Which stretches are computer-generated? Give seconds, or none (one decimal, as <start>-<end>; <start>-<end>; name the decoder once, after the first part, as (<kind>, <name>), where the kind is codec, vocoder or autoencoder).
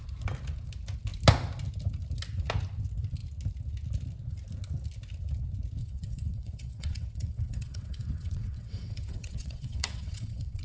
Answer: 5.8-10.6 (vocoder, WaveNeXt)